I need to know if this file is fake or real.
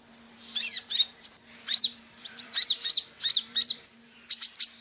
fake